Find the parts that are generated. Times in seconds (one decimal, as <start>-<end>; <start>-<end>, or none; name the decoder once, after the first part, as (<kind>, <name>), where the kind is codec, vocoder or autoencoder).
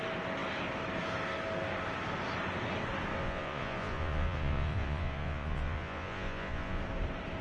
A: 3.2-6.8 (vocoder, Vocos)